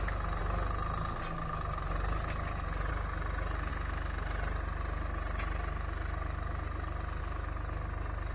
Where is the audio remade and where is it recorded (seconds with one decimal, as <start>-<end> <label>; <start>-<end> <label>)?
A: 0.0-8.3 recorded